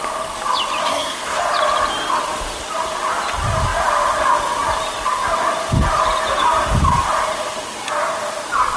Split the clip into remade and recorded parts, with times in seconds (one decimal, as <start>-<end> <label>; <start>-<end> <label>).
0.0-0.8 recorded; 0.8-1.4 remade; 1.4-8.8 recorded